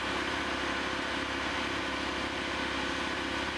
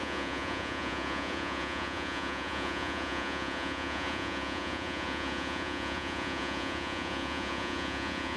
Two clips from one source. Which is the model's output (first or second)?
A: second